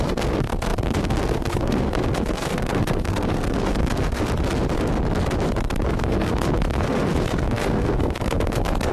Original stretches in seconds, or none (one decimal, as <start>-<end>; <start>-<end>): 4.2-5.9